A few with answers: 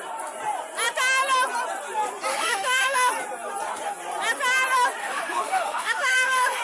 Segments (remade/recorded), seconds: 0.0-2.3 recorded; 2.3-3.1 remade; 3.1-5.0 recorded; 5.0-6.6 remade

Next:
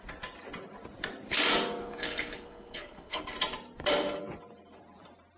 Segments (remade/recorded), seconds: 0.0-1.8 recorded; 1.8-3.2 remade; 3.2-5.4 recorded

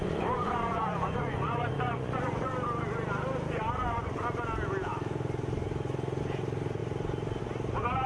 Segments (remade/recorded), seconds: 0.0-2.5 remade; 2.5-8.1 recorded

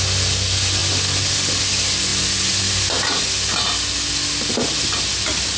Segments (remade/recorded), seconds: 0.0-5.6 recorded

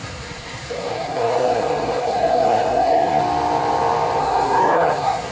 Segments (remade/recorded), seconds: 0.0-3.2 remade; 3.2-4.2 recorded; 4.2-5.3 remade

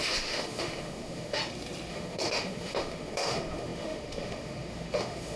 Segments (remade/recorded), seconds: 0.0-1.4 remade; 1.4-1.9 recorded; 1.9-5.4 remade

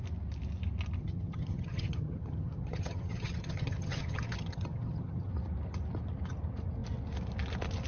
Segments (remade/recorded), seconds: 0.0-1.0 recorded; 1.0-5.3 remade; 5.3-7.9 recorded

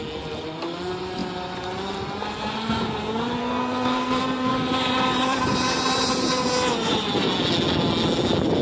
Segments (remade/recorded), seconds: 0.0-3.4 recorded; 3.4-4.5 remade; 4.5-8.6 recorded